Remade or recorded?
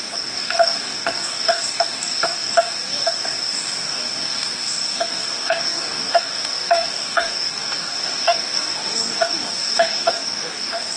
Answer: remade